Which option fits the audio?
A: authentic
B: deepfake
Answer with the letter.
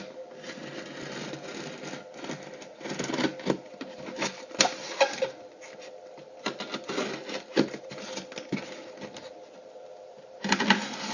A